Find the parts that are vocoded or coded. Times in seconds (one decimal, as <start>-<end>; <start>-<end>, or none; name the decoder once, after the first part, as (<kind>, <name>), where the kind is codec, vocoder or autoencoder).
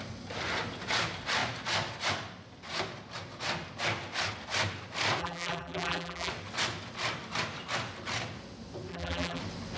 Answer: 5.2-6.3 (vocoder, BigVGAN v2); 8.9-9.4